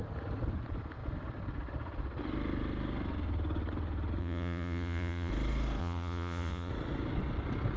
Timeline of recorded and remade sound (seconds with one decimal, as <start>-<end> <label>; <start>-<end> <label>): 0.0-4.2 recorded; 4.2-5.3 remade; 5.3-5.8 recorded; 5.8-6.7 remade; 6.7-7.8 recorded